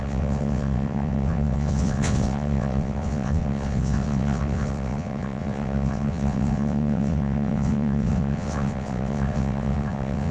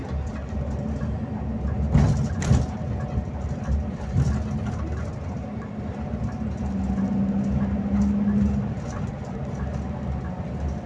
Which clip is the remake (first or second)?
first